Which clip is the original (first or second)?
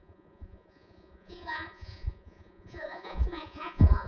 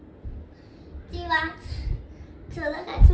second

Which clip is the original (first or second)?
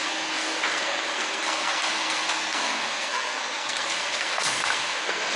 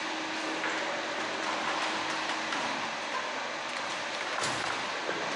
second